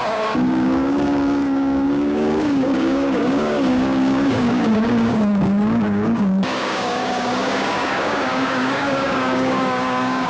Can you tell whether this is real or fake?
fake